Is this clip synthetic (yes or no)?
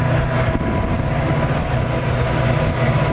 no